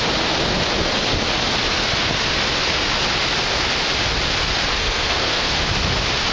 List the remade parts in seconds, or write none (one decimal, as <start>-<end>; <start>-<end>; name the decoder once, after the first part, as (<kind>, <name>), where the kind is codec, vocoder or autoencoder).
4.8-5.6 (codec, SNAC)